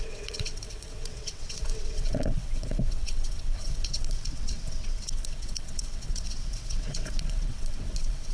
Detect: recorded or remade remade